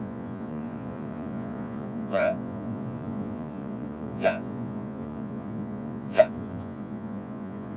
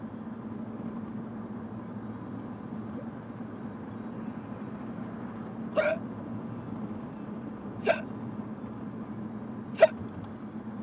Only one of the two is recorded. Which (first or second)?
second